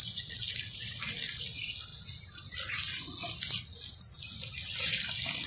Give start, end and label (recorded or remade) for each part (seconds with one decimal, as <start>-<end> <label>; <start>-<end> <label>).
0.0-5.5 recorded